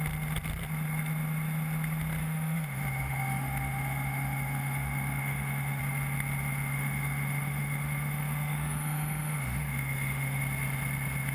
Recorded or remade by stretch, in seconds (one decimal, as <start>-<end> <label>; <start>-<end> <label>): 0.0-2.2 recorded; 2.2-5.8 remade; 5.8-6.7 recorded; 6.7-10.4 remade; 10.4-11.3 recorded